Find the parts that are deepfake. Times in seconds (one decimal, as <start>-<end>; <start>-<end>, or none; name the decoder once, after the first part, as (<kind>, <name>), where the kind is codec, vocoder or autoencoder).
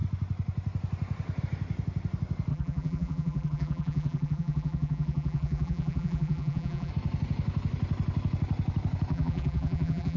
2.5-6.9 (vocoder, BigVGAN v2); 9.1-10.2